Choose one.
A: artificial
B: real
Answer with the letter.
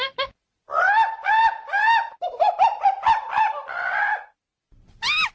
B